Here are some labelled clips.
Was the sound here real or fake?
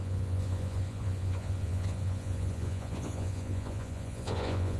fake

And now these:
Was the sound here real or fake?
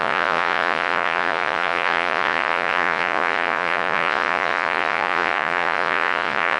fake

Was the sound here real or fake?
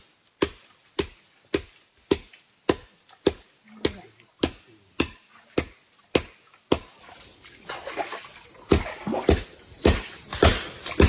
real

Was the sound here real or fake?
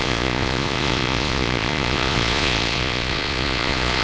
fake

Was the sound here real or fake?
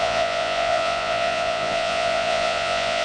fake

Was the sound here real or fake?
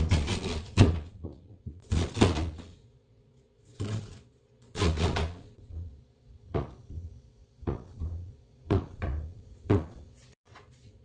fake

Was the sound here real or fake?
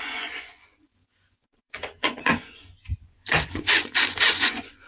fake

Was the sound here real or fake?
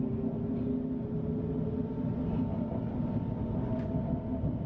real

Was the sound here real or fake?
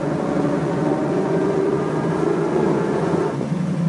fake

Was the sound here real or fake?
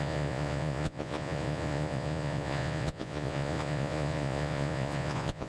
fake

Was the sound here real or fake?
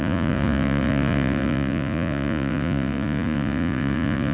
fake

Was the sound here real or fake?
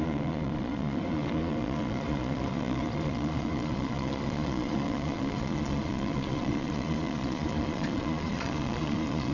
fake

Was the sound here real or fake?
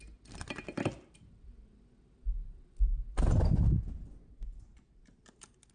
real